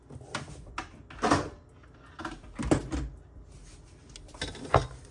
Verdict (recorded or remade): recorded